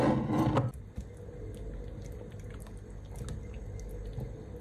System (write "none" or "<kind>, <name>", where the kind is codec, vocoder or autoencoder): none